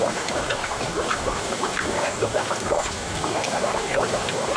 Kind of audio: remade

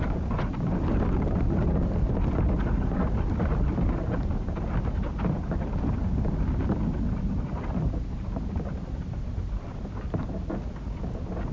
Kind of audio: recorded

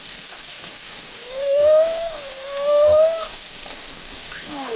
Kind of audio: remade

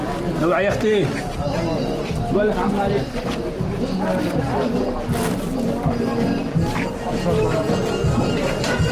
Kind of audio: recorded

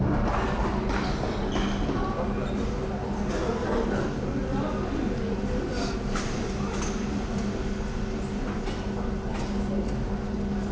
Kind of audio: recorded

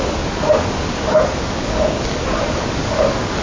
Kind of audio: remade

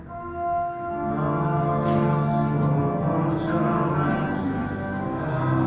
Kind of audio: recorded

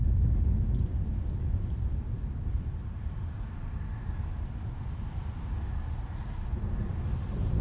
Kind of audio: recorded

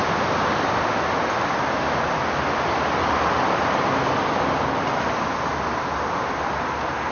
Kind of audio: recorded